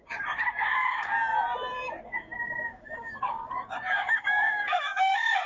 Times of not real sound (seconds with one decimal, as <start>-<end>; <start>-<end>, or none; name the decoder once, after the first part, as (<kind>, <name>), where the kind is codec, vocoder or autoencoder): 0.0-1.3 (codec, DAC); 2.0-5.5